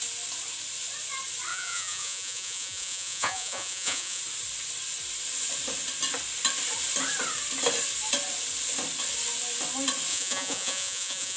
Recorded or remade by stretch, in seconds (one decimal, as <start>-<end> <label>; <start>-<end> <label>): 0.0-1.5 recorded; 1.5-4.2 remade; 4.2-10.1 recorded; 10.1-11.4 remade